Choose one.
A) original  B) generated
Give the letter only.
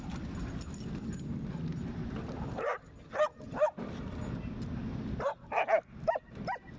A